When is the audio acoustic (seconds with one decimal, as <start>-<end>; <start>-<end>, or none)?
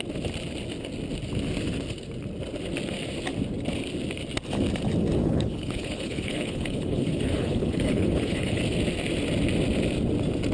0.0-5.2; 8.6-10.5